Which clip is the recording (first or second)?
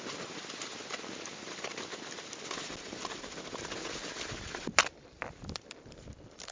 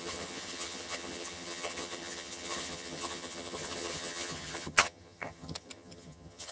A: first